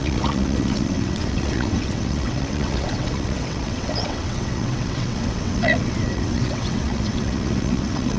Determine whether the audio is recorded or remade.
remade